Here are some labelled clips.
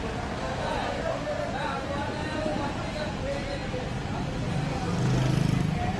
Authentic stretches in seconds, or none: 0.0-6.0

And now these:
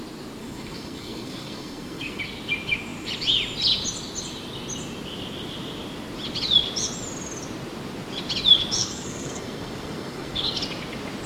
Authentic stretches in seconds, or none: 0.0-0.4; 2.2-8.8; 10.6-11.3